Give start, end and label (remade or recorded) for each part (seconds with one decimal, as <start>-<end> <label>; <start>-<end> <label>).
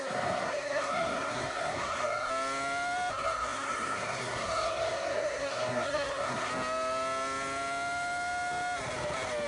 0.0-2.3 remade; 2.3-3.1 recorded; 3.1-6.5 remade; 6.5-9.5 recorded